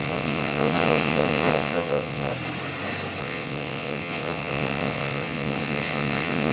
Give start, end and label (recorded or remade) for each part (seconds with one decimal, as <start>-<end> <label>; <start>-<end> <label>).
0.0-2.3 remade; 2.3-3.2 recorded; 3.2-6.5 remade

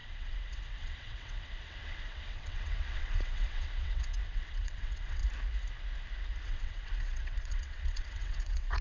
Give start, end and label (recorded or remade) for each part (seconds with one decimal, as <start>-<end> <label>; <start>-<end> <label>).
0.0-5.2 remade; 5.2-6.4 recorded; 6.4-8.8 remade